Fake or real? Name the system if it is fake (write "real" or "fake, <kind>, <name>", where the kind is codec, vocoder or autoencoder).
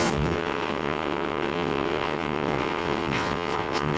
fake, vocoder, WaveNeXt